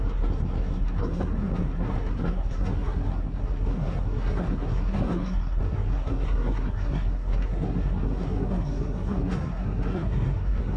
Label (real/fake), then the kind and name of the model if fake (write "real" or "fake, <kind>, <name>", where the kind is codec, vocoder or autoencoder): fake, codec, SNAC